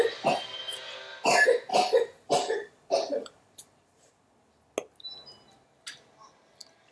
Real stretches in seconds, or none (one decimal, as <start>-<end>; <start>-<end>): 0.0-1.7; 4.1-6.9